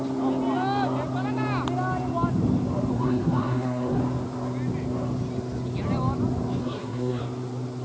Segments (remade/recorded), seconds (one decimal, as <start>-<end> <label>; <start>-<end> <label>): 0.0-2.9 recorded; 2.9-4.0 remade; 4.0-6.6 recorded; 6.6-7.2 remade; 7.2-7.8 recorded